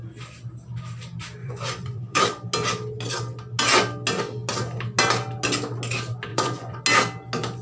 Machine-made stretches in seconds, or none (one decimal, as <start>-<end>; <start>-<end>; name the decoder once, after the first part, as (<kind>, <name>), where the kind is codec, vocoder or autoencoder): 1.4-2.2 (vocoder, Vocos); 6.3-6.8